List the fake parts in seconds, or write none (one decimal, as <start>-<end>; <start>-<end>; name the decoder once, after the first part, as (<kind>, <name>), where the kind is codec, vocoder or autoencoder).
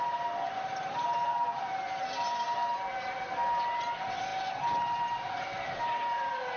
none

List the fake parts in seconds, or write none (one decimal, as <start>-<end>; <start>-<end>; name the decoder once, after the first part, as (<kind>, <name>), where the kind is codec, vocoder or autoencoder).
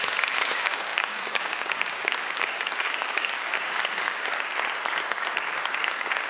0.0-4.5 (codec, DAC); 5.1-6.3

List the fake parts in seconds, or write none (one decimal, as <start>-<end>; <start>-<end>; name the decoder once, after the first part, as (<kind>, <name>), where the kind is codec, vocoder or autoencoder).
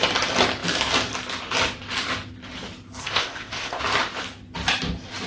3.0-3.8 (codec, ZipCodec)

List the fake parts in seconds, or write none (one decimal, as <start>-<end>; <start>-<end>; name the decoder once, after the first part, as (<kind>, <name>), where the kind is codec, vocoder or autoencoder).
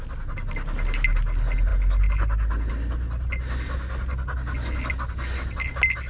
none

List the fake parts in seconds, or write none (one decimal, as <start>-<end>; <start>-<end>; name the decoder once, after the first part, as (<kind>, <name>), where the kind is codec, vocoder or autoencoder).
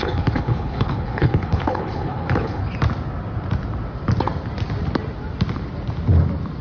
0.0-2.6 (codec, HILCodec)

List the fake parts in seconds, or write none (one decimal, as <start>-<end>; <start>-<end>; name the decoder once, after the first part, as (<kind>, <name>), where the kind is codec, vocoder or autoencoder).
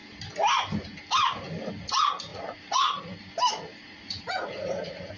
2.3-3.0 (vocoder, Vocos); 3.7-5.2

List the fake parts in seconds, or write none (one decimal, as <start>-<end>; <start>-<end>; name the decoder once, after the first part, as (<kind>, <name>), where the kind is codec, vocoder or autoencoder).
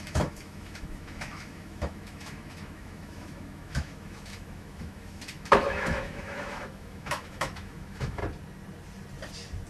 0.0-8.2 (autoencoder, DAC-VAE)